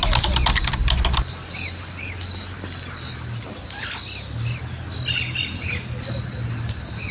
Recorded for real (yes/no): yes